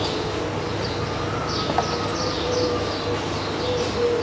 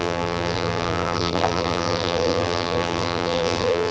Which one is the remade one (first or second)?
second